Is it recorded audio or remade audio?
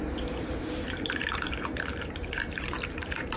remade